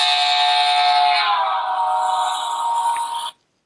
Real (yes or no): yes